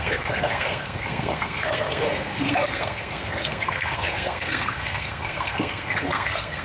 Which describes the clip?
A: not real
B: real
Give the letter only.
A